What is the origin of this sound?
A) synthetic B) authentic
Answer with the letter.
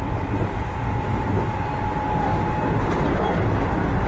B